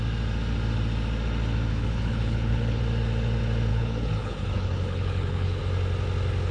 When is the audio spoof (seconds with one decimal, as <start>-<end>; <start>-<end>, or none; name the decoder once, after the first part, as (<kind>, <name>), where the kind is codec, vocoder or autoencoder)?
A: 1.7-2.8 (codec, HILCodec); 3.7-5.6

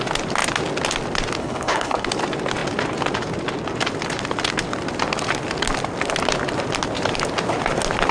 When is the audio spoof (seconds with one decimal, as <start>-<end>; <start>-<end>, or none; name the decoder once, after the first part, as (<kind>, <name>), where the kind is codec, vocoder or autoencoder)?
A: 1.4-2.1 (codec, HILCodec)